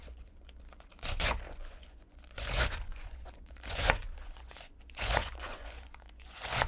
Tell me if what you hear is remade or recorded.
remade